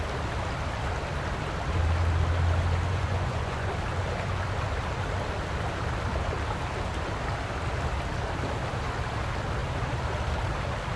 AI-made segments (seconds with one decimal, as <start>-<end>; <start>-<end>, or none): 2.9-3.7